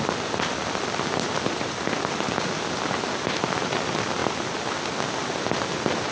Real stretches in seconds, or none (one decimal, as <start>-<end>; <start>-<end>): 0.0-6.1